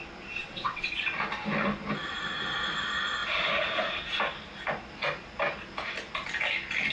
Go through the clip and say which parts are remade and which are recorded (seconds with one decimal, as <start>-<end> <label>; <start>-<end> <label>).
0.0-0.4 recorded; 0.4-0.9 remade; 0.9-6.9 recorded